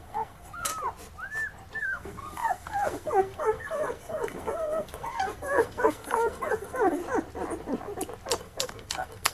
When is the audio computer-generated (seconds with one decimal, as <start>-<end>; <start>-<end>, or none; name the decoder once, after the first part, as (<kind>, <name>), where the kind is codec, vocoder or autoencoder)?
0.0-0.7 (codec, SNAC); 1.8-7.0; 8.4-9.3